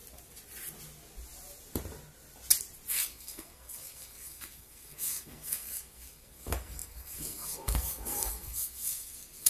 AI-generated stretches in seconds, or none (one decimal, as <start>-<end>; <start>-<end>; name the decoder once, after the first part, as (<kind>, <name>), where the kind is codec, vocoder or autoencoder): 2.9-9.5 (codec, SNAC)